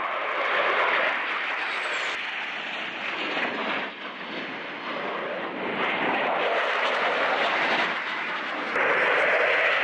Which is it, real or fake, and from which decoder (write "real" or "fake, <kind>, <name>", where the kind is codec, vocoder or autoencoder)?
real